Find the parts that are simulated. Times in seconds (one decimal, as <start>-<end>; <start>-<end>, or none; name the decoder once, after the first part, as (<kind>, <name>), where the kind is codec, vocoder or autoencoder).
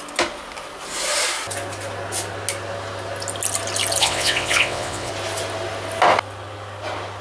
4.0-5.1 (vocoder, WaveNeXt)